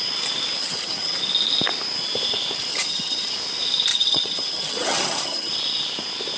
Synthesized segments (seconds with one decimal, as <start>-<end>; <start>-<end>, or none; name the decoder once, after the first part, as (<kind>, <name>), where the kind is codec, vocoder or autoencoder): 0.6-1.2 (vocoder, HiFi-GAN); 2.7-3.3; 3.9-5.5